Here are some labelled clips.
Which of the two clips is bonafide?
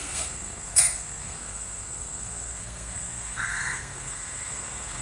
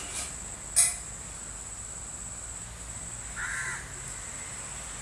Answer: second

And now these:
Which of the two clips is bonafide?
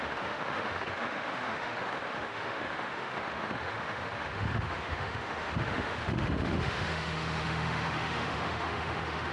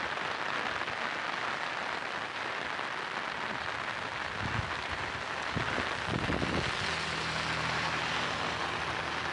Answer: second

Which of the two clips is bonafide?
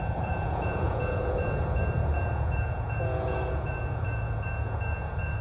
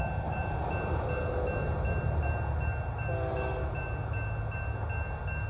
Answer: second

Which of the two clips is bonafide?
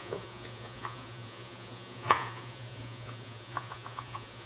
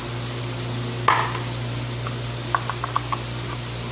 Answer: second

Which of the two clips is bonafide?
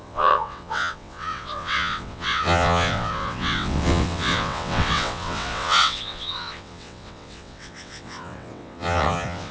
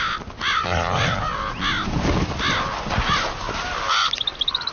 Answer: second